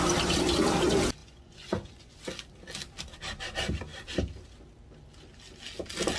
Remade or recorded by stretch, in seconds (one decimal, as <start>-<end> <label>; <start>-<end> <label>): 0.0-1.2 recorded; 1.2-2.2 remade; 2.2-6.2 recorded